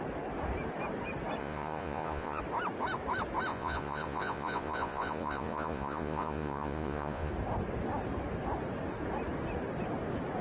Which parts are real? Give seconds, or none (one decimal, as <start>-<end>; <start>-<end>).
0.0-1.4; 2.4-3.5; 7.3-10.4